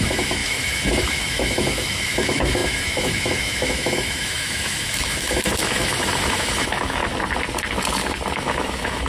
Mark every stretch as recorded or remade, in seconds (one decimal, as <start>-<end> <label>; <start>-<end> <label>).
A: 0.0-7.0 remade; 7.0-8.3 recorded; 8.3-9.1 remade